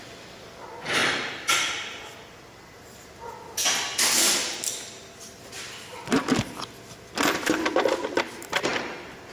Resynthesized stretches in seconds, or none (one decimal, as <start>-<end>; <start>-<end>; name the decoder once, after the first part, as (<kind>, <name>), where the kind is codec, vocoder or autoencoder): 0.0-3.6 (vocoder, BigVGAN v2); 7.2-9.3